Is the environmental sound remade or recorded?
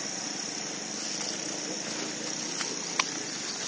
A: recorded